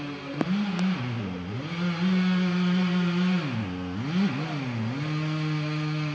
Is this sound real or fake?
real